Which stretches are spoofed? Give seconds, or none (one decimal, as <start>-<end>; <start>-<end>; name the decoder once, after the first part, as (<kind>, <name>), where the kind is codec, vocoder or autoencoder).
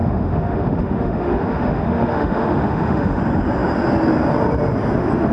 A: 0.0-3.2 (autoencoder, DAC-VAE)